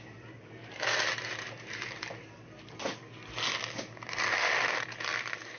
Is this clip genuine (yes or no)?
yes